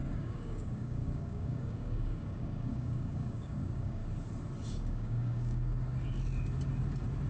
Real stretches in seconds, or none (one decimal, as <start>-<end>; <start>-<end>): 4.0-4.7; 5.7-7.3